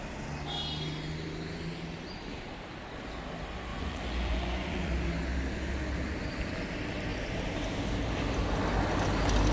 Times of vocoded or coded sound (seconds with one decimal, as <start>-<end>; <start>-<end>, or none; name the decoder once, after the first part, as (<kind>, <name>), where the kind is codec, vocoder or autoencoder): 3.7-4.9 (vocoder, Vocos)